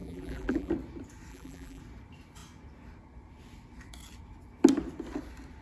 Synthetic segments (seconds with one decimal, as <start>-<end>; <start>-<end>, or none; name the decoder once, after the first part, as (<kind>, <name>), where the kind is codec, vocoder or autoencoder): 0.0-0.7 (vocoder, BigVGAN v2); 1.3-1.8